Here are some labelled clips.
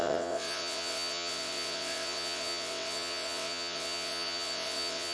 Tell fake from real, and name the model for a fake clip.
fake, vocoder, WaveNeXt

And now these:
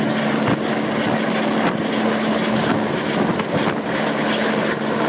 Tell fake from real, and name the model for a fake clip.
real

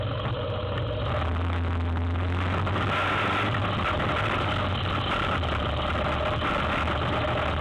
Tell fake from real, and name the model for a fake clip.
real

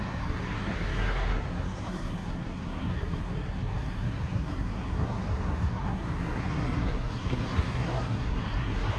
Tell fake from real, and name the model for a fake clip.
fake, codec, SNAC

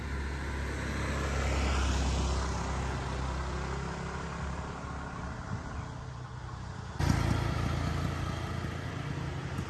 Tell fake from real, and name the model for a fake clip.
real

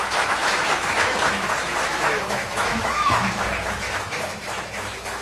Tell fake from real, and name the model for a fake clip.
fake, autoencoder, DAC-VAE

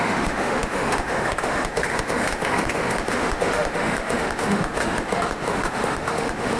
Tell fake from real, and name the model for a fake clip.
fake, autoencoder, DAC-VAE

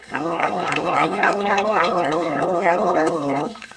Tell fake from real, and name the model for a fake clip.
fake, codec, SNAC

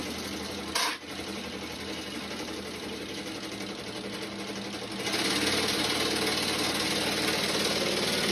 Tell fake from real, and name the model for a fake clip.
real